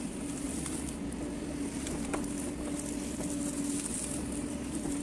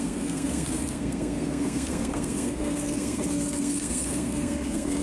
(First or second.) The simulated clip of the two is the second